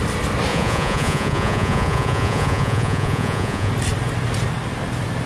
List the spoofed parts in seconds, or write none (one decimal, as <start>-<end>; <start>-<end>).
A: 0.5-3.7